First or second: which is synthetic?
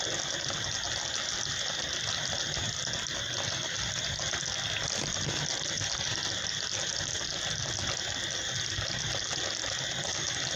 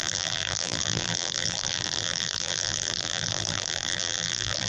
second